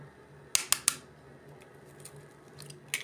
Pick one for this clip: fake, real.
real